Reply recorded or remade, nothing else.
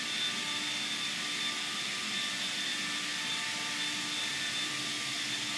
recorded